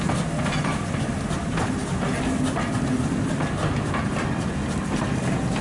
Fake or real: real